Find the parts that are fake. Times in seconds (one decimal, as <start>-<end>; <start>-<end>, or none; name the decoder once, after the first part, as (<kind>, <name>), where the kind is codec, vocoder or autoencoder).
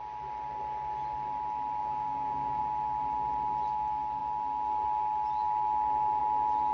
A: 1.8-2.6 (codec, DAC)